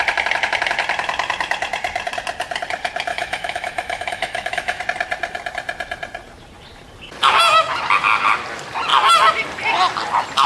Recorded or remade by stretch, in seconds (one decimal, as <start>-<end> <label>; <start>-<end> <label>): 0.0-3.1 recorded; 3.1-4.8 remade; 4.8-10.5 recorded

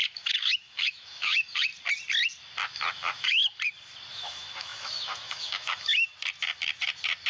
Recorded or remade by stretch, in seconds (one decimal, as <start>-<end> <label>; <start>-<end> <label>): 0.0-1.7 remade; 1.7-2.9 recorded; 2.9-3.4 remade; 3.4-4.1 recorded; 4.1-6.1 remade; 6.1-7.3 recorded

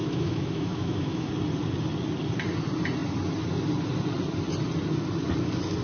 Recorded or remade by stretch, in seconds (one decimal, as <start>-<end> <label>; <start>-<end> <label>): 0.0-1.3 remade; 1.3-5.8 recorded

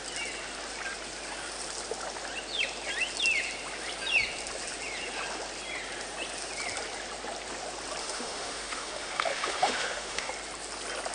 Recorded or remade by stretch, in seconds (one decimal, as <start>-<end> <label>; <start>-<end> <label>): 0.0-8.0 recorded; 8.0-10.3 remade; 10.3-11.1 recorded

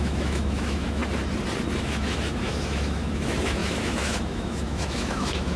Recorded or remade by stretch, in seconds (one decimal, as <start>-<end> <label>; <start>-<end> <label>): 0.0-1.0 remade; 1.0-1.8 recorded; 1.8-5.6 remade

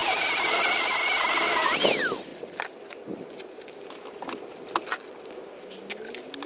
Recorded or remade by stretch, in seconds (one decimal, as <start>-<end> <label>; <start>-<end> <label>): 0.0-6.5 recorded

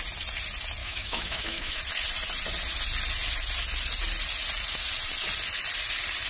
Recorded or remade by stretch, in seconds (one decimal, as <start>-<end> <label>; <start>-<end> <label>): 0.0-0.8 recorded; 0.8-1.8 remade; 1.8-6.3 recorded